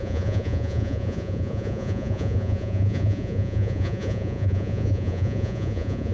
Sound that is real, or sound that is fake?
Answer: fake